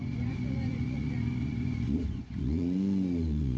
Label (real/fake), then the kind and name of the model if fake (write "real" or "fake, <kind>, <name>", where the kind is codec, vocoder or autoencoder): fake, vocoder, Vocos